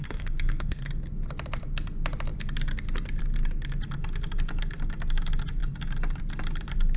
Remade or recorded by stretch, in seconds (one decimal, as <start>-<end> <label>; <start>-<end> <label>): 0.0-0.9 remade; 0.9-7.0 recorded